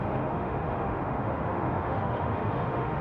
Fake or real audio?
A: fake